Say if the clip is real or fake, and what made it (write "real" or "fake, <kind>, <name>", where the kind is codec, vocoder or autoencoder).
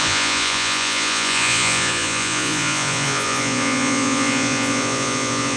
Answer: fake, vocoder, Vocos